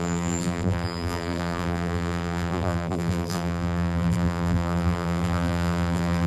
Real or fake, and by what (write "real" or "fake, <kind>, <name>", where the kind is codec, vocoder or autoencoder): fake, vocoder, BigVGAN v2